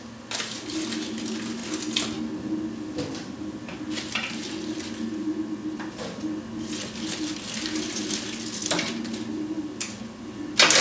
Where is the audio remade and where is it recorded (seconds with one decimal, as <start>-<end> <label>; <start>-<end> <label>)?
0.0-10.8 recorded